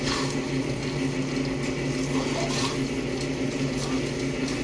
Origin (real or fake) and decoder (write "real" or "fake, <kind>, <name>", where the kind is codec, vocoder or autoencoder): real